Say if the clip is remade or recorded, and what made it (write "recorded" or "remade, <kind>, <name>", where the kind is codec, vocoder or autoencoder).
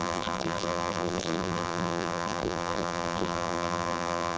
remade, vocoder, BigVGAN v2